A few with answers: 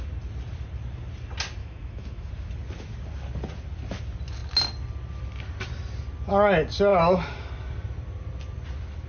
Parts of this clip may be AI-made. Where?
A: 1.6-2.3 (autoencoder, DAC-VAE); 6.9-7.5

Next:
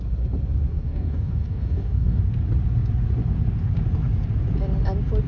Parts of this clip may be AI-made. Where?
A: 0.7-2.2 (codec, DAC)